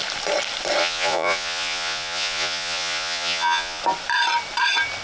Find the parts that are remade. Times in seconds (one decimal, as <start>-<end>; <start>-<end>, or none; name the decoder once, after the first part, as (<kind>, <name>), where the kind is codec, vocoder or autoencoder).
0.8-3.8 (vocoder, Vocos)